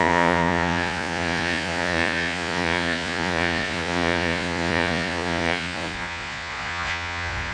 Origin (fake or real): fake